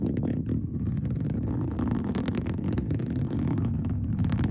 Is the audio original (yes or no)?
no